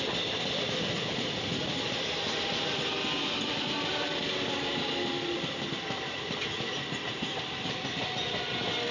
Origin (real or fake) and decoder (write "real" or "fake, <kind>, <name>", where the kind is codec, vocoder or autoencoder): real